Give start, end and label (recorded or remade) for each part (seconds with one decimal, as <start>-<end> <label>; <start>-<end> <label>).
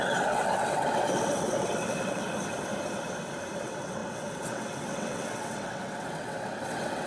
0.0-2.2 remade; 2.2-3.6 recorded; 3.6-7.1 remade